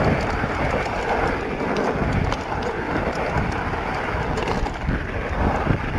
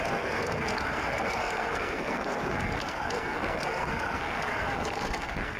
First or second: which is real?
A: first